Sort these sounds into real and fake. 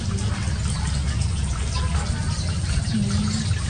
real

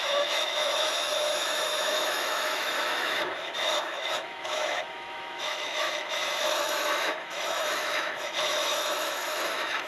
fake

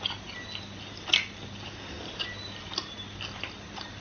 real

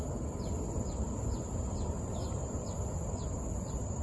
real